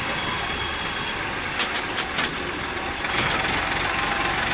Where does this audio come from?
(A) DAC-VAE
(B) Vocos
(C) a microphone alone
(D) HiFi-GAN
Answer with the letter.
C